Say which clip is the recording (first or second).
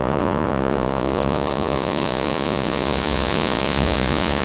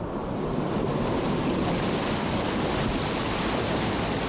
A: second